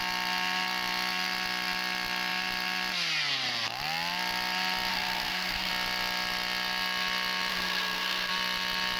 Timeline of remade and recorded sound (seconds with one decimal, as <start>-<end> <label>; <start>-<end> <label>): 0.0-4.9 recorded; 4.9-5.7 remade; 5.7-7.5 recorded; 7.5-8.3 remade; 8.3-9.0 recorded